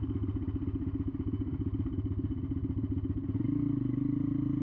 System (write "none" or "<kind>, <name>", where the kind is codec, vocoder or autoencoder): none